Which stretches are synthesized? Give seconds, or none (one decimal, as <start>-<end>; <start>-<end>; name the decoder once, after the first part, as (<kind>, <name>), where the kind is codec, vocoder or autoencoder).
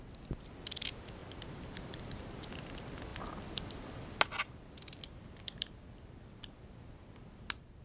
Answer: 1.2-2.4 (vocoder, BigVGAN v2)